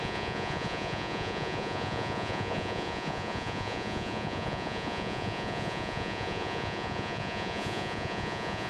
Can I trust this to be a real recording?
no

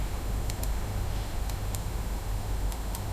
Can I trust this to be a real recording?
no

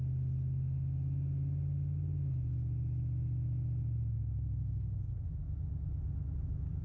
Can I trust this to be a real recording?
yes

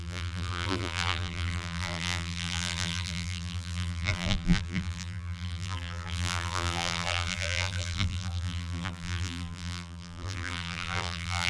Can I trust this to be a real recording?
no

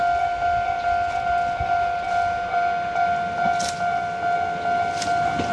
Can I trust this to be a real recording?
yes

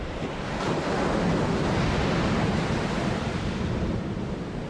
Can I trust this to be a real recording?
yes